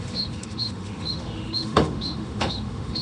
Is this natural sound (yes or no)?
no